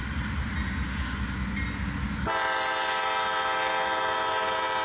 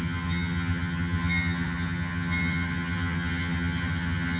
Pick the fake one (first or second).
second